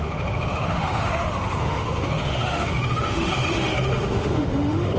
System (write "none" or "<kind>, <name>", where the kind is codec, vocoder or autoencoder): autoencoder, DAC-VAE